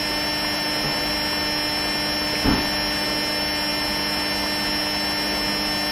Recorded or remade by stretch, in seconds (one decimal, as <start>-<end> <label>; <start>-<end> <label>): 0.0-5.9 recorded